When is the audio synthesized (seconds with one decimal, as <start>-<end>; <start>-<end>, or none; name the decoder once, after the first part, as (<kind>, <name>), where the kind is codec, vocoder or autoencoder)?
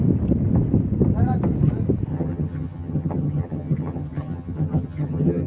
2.1-5.5 (vocoder, HiFi-GAN)